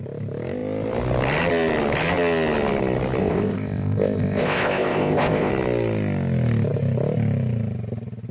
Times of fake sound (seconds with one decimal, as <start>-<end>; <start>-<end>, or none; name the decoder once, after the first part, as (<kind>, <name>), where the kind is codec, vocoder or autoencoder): 3.2-5.5 (codec, ZipCodec)